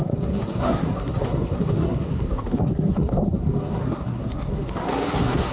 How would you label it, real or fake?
fake